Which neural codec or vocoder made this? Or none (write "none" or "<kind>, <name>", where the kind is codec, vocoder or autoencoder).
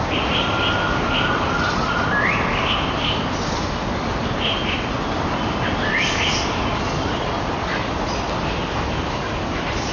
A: none